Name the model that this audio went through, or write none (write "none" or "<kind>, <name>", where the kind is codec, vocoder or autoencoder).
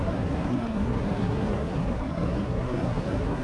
codec, SNAC